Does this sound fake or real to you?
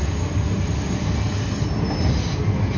real